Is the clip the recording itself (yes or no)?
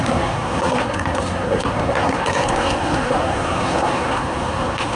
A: no